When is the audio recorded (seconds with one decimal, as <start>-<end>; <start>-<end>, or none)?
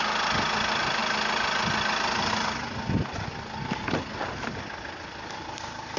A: 0.0-6.0